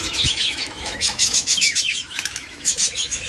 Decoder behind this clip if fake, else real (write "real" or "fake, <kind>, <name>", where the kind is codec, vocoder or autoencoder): fake, autoencoder, DAC-VAE